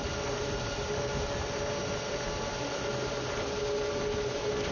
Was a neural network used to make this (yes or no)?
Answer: no